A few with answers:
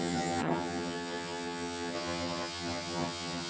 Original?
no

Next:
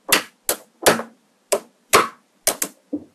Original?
yes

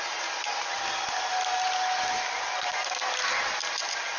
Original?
yes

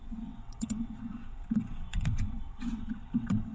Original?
no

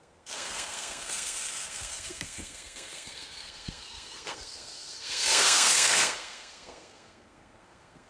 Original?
no